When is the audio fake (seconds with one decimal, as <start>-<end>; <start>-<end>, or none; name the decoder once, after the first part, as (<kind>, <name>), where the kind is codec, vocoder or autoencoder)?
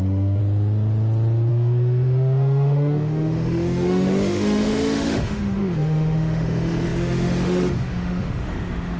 0.0-0.4 (autoencoder, DAC-VAE); 1.5-9.0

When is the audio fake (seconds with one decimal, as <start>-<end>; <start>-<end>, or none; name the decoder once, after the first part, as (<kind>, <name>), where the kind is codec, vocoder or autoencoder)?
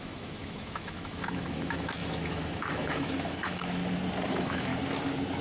0.0-3.8 (autoencoder, DAC-VAE); 4.3-4.7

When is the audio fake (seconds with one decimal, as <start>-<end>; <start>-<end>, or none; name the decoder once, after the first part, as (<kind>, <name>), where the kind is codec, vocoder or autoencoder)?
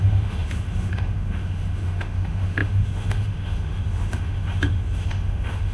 0.0-5.7 (autoencoder, DAC-VAE)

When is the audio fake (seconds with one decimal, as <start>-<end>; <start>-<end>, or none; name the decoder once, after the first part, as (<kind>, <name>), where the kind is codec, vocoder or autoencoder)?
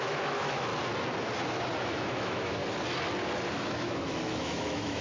0.0-0.7 (autoencoder, DAC-VAE); 1.8-2.6; 3.5-5.0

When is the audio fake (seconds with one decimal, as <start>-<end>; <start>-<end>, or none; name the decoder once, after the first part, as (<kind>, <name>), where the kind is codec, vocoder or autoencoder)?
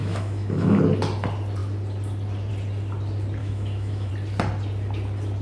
0.0-0.8 (autoencoder, DAC-VAE); 3.4-4.1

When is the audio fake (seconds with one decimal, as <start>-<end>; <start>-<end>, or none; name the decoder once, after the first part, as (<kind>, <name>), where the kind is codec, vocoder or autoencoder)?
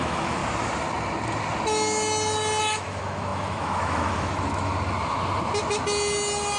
0.0-0.4 (autoencoder, DAC-VAE); 2.6-4.7